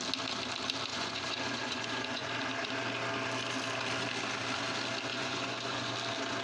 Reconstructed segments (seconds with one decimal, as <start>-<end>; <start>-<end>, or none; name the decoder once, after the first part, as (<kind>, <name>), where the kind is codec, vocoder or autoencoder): 0.9-2.3 (vocoder, Vocos); 5.1-5.9